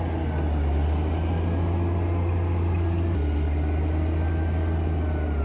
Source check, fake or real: real